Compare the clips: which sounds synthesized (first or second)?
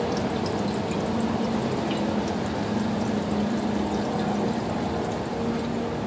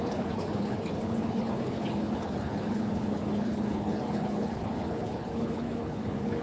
second